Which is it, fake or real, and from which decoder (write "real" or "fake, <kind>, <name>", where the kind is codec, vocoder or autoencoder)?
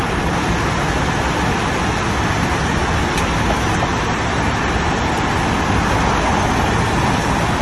real